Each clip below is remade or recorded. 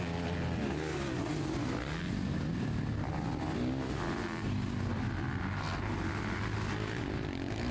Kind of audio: recorded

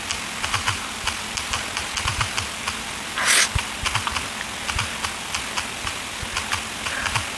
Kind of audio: recorded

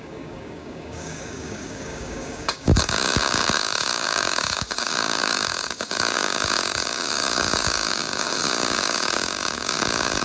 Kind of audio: remade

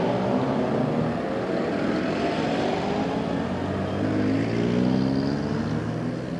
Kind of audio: recorded